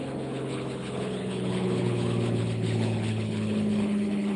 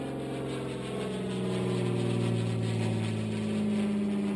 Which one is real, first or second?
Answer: second